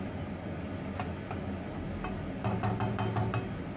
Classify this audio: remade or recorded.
recorded